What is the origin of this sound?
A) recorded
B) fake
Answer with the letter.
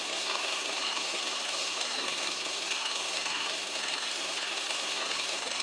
B